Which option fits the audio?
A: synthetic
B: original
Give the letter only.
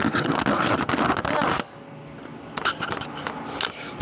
B